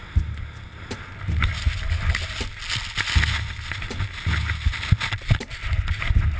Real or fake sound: real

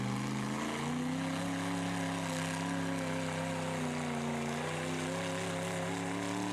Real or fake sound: real